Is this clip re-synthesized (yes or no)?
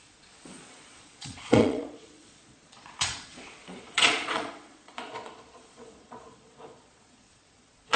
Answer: yes